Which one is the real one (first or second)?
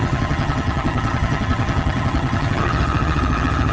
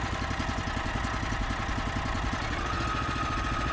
second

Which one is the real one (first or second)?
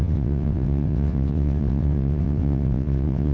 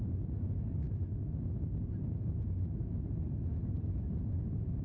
second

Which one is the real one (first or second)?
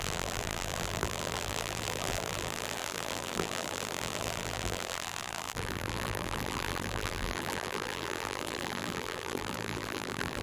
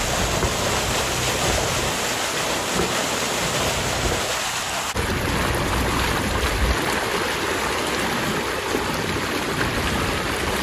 second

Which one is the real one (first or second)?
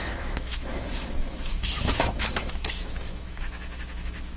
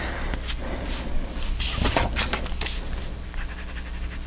second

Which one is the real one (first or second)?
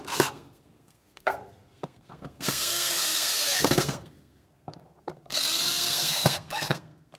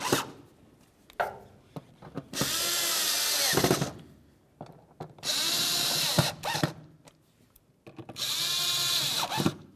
second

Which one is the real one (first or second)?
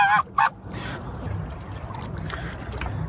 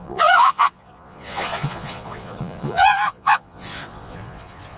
first